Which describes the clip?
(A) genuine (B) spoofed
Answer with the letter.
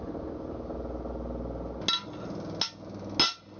A